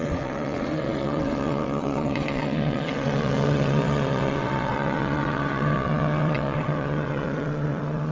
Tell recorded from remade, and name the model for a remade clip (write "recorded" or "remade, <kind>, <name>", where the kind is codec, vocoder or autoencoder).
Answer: remade, vocoder, WaveNeXt